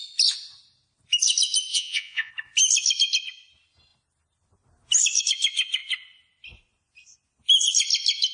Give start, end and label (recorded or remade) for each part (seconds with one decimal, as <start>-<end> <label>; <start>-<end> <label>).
0.0-1.7 recorded; 1.7-2.3 remade; 2.3-8.3 recorded